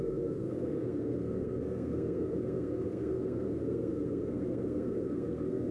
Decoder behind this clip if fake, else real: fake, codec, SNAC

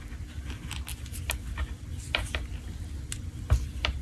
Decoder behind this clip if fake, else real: real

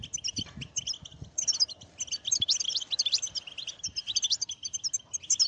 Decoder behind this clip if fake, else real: real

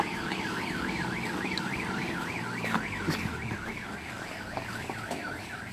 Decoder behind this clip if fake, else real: fake, codec, DAC